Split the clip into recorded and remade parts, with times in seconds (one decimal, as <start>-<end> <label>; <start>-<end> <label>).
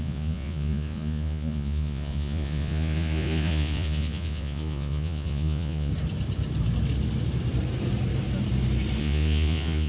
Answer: 0.0-5.9 remade; 5.9-9.0 recorded; 9.0-9.9 remade